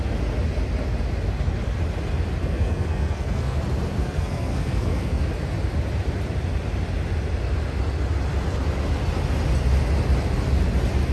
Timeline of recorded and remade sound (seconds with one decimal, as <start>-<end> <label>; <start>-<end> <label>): 0.0-2.4 recorded; 2.4-3.6 remade; 3.6-4.0 recorded; 4.0-5.2 remade; 5.2-11.1 recorded